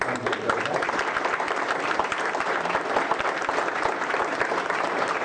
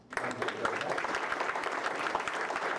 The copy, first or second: second